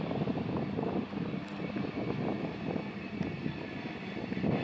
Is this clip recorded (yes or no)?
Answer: yes